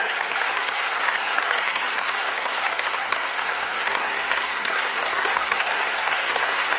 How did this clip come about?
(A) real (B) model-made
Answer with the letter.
B